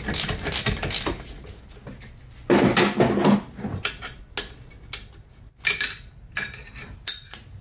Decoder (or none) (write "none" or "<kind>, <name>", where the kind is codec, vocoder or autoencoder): none